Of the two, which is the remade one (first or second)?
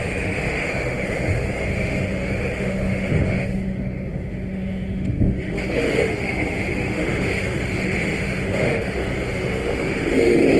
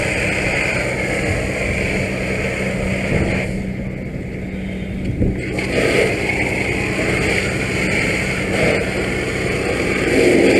first